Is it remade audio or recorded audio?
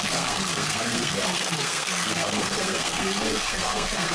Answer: remade